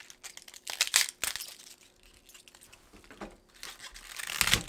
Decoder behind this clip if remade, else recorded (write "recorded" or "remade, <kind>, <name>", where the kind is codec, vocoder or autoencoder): recorded